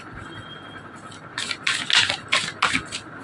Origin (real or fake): real